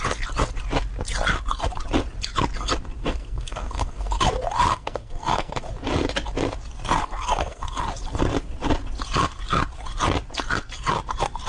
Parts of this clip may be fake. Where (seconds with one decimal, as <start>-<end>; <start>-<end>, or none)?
3.0-4.2; 4.7-5.6; 7.0-7.8